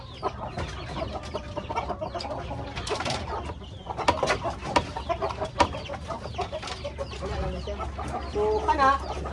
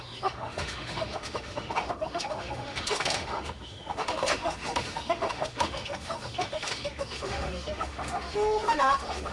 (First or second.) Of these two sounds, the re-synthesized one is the second